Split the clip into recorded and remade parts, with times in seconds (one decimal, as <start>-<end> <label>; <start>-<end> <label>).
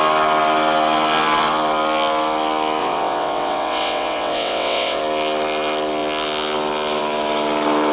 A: 0.0-2.8 recorded; 2.8-5.0 remade; 5.0-7.9 recorded